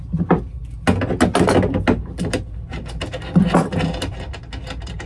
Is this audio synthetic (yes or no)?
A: no